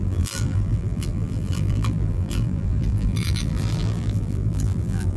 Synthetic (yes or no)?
yes